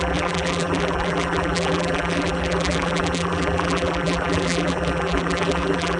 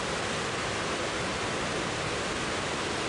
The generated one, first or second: first